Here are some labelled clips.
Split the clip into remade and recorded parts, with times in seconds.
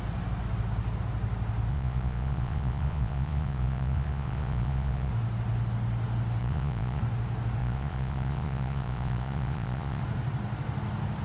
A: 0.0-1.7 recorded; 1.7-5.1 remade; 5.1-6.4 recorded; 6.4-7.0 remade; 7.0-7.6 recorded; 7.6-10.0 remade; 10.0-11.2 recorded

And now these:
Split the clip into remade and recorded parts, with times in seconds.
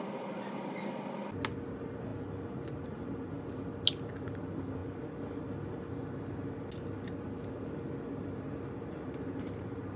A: 0.0-10.0 recorded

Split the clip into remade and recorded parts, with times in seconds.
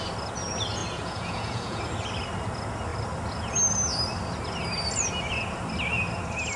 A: 0.0-0.8 recorded; 0.8-1.8 remade; 1.8-6.6 recorded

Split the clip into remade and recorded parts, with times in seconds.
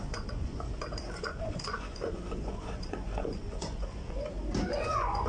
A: 0.0-4.3 remade; 4.3-4.8 recorded; 4.8-5.3 remade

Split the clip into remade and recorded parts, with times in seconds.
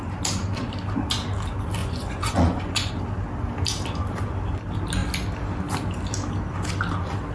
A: 0.0-1.8 recorded; 1.8-2.9 remade; 2.9-7.3 recorded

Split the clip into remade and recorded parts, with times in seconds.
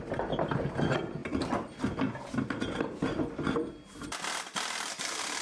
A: 0.0-5.4 recorded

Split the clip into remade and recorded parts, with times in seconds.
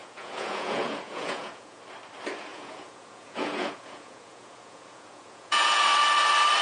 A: 0.0-1.8 remade; 1.8-2.5 recorded; 2.5-5.8 remade; 5.8-6.6 recorded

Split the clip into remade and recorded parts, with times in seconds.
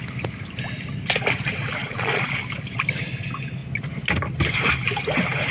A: 0.0-1.8 recorded; 1.8-2.3 remade; 2.3-5.5 recorded